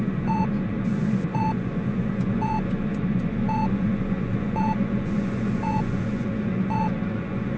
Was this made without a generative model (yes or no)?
no